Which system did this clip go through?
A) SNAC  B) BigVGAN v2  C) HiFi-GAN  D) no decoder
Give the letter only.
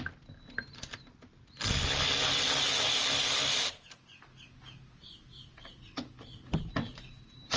D